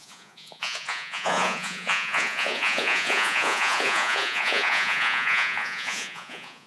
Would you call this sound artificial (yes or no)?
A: yes